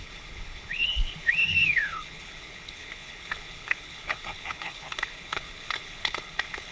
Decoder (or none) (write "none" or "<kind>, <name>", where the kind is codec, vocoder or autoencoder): codec, HILCodec